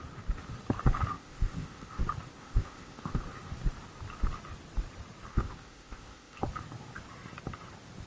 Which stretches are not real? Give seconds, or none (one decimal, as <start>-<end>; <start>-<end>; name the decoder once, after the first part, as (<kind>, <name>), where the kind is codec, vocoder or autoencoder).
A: 1.1-2.0 (codec, ZipCodec); 2.4-3.2; 5.3-6.4

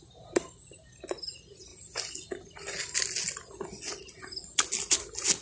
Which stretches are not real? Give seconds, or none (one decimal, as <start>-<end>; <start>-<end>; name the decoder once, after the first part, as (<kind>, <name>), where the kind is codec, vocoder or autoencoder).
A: none

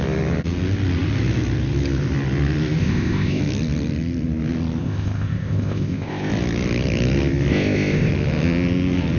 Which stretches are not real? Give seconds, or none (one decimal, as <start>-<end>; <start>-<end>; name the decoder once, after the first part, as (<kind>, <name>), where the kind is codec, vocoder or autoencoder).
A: 2.8-3.4 (codec, ZipCodec); 4.8-6.3; 7.5-8.1

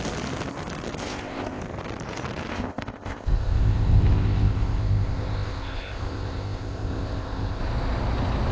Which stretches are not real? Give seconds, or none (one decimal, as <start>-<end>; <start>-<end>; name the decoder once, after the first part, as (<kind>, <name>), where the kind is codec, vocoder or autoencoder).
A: 1.0-1.6 (codec, ZipCodec); 2.5-7.6

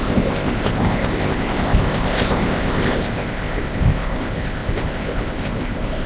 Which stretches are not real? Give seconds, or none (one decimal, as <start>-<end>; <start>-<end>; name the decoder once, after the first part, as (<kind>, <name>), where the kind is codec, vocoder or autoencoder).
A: 0.0-6.1 (codec, ZipCodec)

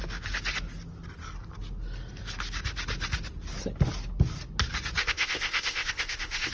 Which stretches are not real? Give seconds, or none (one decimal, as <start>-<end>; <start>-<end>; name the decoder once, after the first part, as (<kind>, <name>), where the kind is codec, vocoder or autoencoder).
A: 5.0-6.5 (codec, ZipCodec)